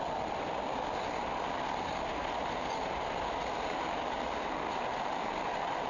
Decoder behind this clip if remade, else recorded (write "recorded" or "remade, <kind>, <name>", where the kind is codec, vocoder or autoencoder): recorded